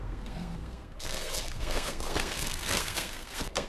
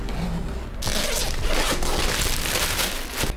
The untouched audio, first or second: second